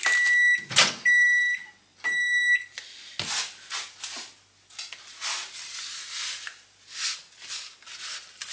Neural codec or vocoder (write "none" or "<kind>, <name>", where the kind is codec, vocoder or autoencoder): none